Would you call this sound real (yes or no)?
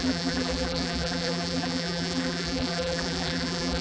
no